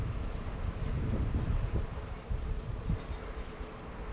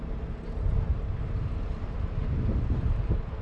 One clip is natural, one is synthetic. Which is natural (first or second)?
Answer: second